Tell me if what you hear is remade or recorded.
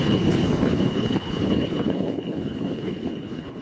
remade